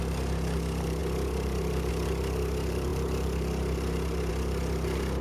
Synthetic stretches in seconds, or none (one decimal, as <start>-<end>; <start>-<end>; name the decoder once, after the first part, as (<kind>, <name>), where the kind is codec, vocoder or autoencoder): none